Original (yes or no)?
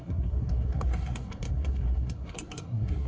no